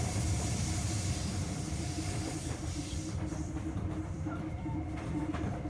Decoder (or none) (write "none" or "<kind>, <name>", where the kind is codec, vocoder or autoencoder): vocoder, BigVGAN v2